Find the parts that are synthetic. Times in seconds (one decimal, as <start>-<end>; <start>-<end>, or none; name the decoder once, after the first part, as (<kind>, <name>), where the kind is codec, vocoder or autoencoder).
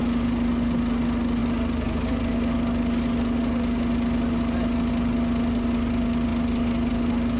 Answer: none